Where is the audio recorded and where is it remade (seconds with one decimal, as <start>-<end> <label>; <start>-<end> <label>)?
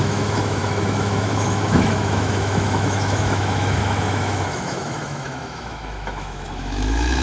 0.0-7.2 remade